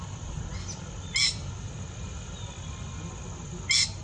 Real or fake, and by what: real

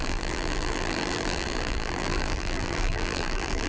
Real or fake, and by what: fake, vocoder, BigVGAN v2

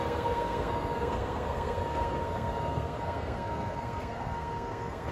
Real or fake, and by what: fake, codec, SNAC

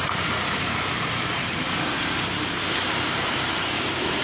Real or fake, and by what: fake, vocoder, BigVGAN v2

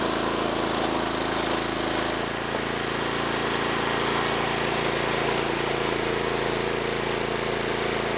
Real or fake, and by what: real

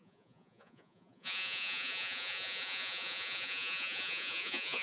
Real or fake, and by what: fake, vocoder, Vocos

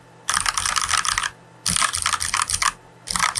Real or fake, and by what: real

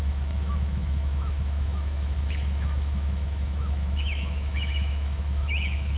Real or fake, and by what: fake, autoencoder, DAC-VAE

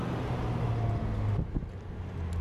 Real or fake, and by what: real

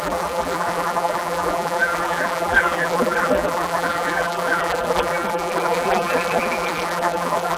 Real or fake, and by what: fake, vocoder, BigVGAN v2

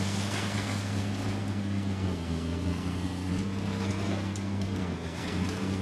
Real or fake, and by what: fake, codec, SNAC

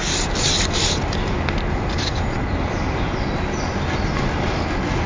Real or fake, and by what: real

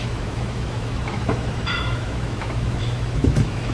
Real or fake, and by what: fake, autoencoder, DAC-VAE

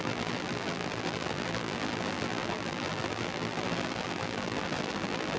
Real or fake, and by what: fake, vocoder, BigVGAN v2